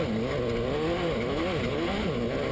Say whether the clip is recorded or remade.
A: recorded